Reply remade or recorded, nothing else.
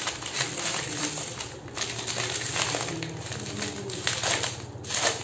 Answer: recorded